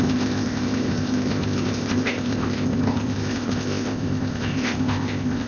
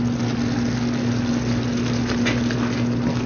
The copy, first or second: first